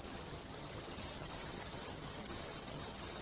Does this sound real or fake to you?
fake